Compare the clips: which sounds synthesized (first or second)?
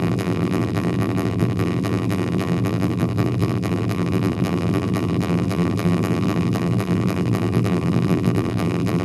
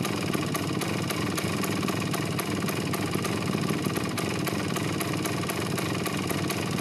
first